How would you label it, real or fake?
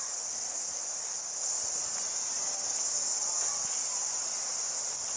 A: real